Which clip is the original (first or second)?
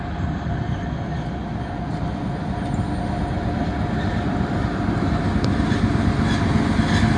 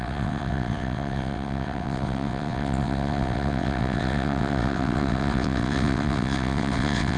first